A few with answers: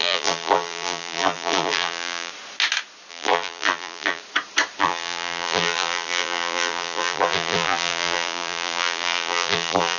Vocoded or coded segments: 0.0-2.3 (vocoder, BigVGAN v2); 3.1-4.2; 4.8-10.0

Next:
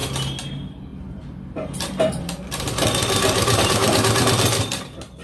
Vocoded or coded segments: 0.5-5.2 (vocoder, BigVGAN v2)

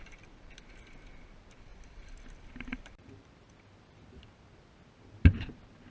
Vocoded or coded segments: none